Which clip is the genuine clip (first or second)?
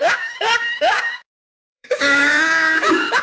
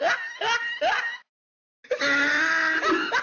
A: second